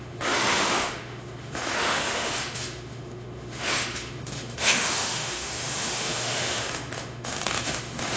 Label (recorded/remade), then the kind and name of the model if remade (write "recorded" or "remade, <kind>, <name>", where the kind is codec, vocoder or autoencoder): remade, autoencoder, DAC-VAE